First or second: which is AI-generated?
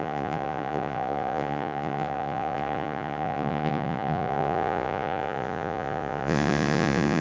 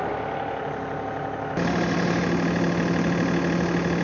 first